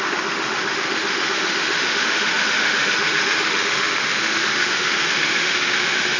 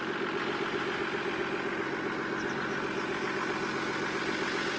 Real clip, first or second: second